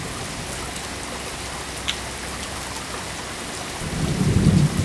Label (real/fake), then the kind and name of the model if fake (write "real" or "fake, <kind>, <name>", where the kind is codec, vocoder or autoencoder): real